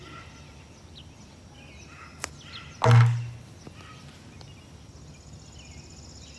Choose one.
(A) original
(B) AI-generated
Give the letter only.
A